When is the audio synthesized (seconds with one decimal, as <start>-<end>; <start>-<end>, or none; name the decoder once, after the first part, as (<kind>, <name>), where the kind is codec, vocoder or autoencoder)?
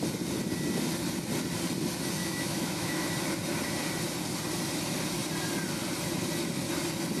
2.2-3.1 (autoencoder, DAC-VAE)